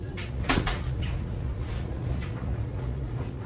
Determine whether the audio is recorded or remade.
remade